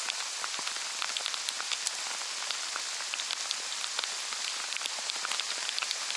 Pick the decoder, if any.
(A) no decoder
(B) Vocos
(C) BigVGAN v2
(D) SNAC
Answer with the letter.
A